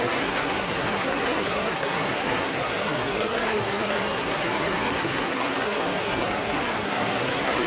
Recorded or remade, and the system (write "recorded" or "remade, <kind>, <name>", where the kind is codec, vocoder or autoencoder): remade, codec, SNAC